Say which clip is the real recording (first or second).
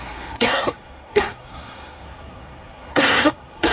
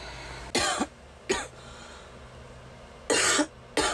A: second